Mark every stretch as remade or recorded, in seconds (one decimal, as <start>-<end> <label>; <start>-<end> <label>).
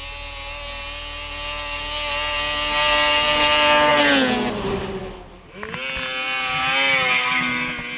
0.0-8.0 recorded